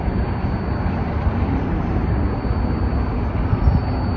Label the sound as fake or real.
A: fake